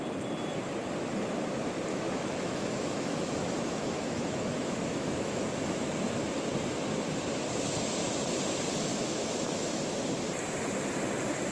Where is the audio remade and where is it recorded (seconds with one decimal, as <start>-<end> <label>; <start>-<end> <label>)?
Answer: 0.0-1.9 recorded; 1.9-5.8 remade; 5.8-8.9 recorded; 8.9-9.8 remade; 9.8-11.5 recorded